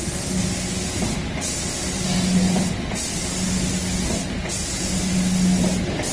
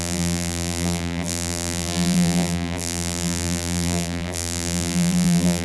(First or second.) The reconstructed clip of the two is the second